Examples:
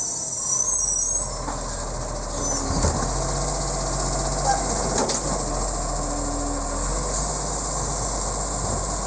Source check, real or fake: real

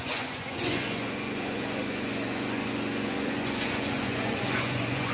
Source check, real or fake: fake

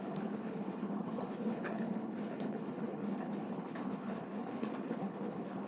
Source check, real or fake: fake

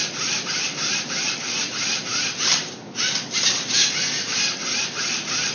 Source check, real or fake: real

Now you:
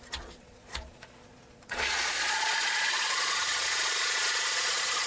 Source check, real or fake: fake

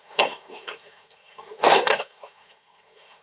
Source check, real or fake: fake